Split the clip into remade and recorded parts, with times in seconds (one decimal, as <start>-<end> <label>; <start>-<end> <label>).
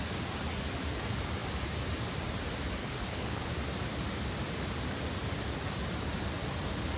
0.0-2.8 recorded; 2.8-3.5 remade; 3.5-7.0 recorded